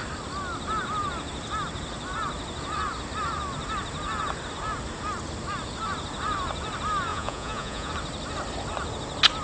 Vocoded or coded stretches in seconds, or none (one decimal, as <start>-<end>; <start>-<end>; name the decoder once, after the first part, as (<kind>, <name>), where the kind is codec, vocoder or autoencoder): 7.1-7.9 (vocoder, Vocos)